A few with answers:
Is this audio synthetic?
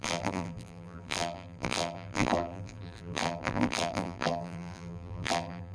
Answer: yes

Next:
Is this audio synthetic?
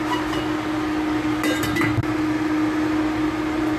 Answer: no